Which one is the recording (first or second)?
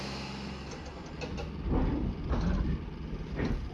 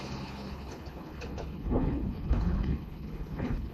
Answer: first